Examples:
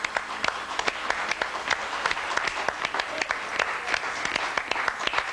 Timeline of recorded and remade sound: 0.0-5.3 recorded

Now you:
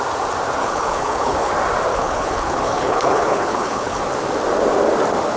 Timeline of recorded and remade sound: 0.0-0.6 recorded; 0.6-1.5 remade; 1.5-1.9 recorded; 1.9-4.0 remade; 4.0-5.4 recorded

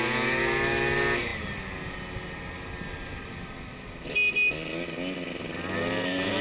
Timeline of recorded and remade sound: 0.0-6.4 recorded

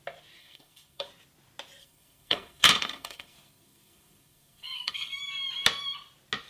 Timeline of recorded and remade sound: 0.0-0.4 recorded; 0.4-1.1 remade; 1.1-1.8 recorded; 1.8-5.2 remade; 5.2-6.5 recorded